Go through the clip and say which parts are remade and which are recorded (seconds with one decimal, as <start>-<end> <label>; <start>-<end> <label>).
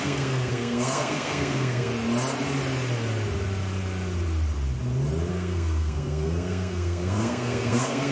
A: 0.0-1.9 remade; 1.9-5.3 recorded; 5.3-8.1 remade